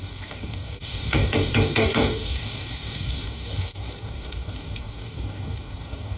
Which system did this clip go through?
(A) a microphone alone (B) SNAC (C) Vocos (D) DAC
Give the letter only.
D